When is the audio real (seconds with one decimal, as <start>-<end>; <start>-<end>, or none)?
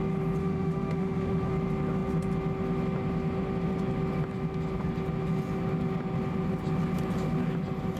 0.0-0.4; 1.5-8.0